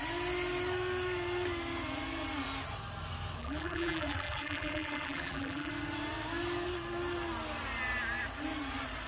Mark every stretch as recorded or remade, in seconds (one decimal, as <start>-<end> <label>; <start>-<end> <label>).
0.0-3.4 recorded; 3.4-5.7 remade; 5.7-9.1 recorded